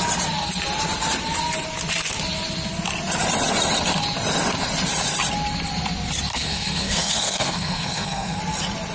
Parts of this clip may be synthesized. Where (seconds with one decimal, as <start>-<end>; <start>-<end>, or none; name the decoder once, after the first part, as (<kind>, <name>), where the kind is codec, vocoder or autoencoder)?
6.3-8.4 (codec, SNAC)